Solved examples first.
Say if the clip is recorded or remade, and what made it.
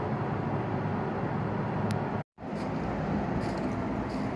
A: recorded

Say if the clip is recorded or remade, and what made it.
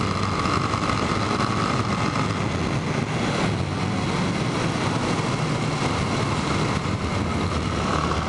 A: recorded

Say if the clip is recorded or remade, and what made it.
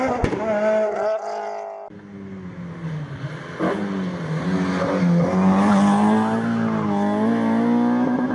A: recorded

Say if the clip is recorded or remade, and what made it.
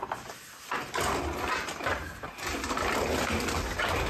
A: recorded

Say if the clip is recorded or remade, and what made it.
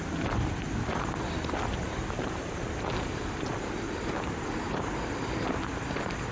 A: recorded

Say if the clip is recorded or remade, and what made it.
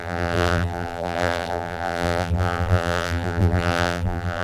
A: remade, vocoder, BigVGAN v2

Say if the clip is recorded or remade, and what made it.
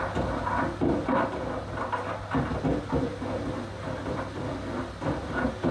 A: recorded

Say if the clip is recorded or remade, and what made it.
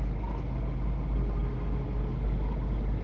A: recorded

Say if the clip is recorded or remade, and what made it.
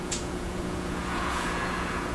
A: remade, vocoder, Vocos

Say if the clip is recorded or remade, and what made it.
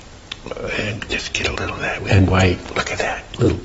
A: remade, vocoder, BigVGAN v2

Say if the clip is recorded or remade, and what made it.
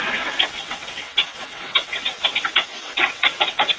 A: remade, vocoder, WaveNeXt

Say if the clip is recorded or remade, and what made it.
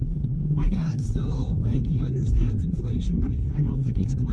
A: remade, codec, SNAC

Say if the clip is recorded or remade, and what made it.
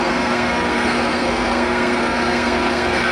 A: remade, codec, SNAC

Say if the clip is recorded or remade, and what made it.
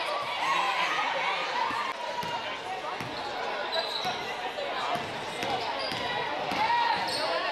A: recorded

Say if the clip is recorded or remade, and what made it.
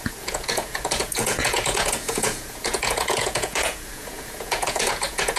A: remade, vocoder, Vocos